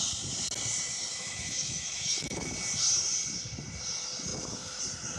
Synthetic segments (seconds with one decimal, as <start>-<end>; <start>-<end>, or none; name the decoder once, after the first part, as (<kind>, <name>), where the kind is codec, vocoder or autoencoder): 1.1-2.5 (autoencoder, DAC-VAE); 4.3-4.8